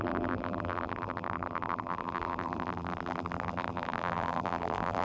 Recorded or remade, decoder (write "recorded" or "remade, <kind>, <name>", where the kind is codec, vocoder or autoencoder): remade, vocoder, BigVGAN v2